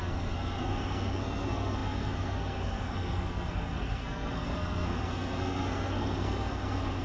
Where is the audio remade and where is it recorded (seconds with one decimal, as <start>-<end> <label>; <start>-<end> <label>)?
0.0-7.0 remade